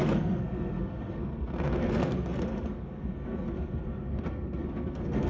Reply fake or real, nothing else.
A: fake